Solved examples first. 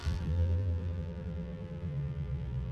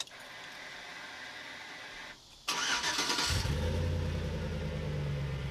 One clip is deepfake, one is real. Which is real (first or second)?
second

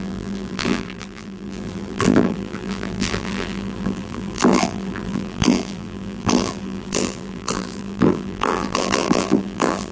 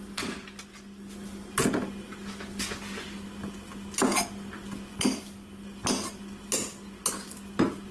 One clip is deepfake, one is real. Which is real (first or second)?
second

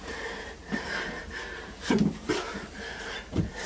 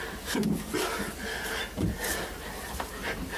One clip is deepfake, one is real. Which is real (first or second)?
second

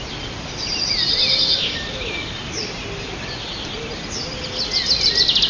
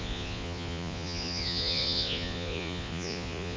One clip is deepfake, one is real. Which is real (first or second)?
first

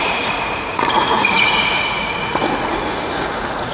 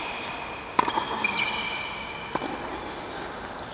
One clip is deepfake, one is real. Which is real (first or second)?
second